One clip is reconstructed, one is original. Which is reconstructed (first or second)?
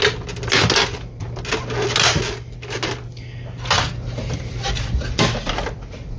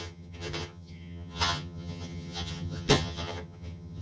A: second